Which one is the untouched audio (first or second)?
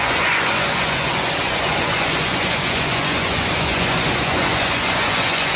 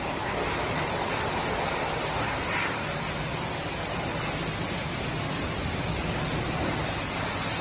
second